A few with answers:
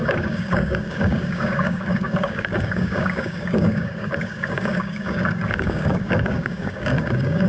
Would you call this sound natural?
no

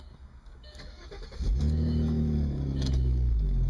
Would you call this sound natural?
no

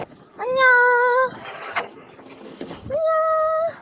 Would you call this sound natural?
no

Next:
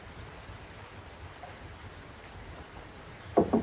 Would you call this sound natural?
yes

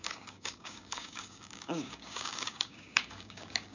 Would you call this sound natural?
no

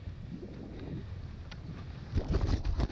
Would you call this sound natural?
yes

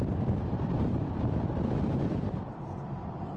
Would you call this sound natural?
yes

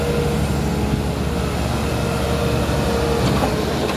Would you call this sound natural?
yes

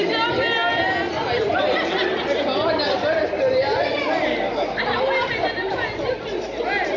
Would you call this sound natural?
yes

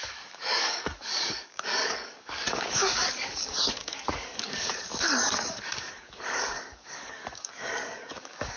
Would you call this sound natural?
no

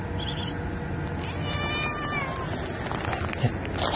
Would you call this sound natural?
yes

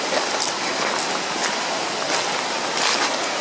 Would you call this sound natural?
yes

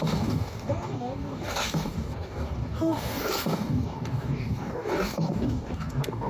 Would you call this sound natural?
no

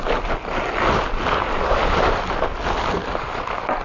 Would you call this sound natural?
yes